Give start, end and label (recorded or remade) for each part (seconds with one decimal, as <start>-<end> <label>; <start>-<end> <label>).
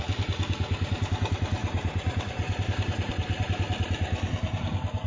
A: 0.0-1.6 recorded; 1.6-3.1 remade; 3.1-5.1 recorded